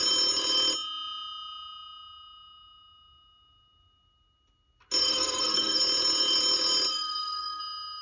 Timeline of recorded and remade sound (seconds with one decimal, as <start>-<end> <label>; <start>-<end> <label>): 0.0-5.0 recorded; 5.0-5.8 remade; 5.8-6.9 recorded; 6.9-7.6 remade; 7.6-8.0 recorded